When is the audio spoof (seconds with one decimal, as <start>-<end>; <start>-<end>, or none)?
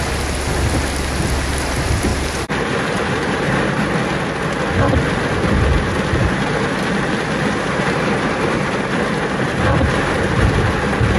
2.1-3.9; 6.2-10.5